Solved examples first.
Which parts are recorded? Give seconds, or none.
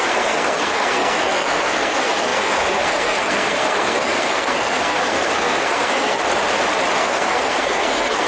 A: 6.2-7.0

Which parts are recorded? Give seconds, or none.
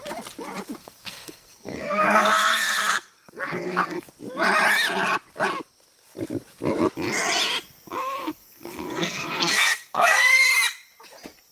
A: 0.0-0.8; 4.1-8.0; 10.5-11.5